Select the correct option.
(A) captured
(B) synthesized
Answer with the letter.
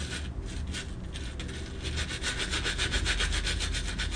A